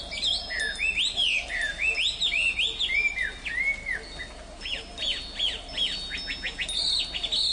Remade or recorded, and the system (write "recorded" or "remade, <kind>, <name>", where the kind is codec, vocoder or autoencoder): recorded